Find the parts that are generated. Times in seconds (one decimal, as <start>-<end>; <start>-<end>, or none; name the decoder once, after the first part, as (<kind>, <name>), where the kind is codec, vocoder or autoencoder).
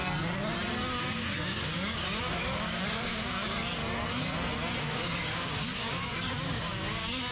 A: 1.0-3.8 (codec, DAC); 4.8-7.3